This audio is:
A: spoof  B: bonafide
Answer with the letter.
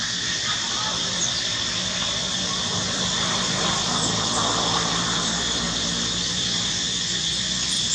A